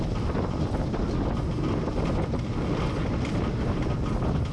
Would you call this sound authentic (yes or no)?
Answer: yes